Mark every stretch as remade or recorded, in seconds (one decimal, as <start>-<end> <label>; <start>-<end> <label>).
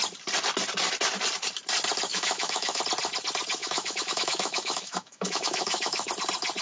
0.0-2.1 recorded; 2.1-2.8 remade; 2.8-3.6 recorded; 3.6-6.1 remade; 6.1-6.6 recorded